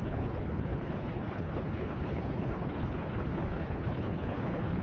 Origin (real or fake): fake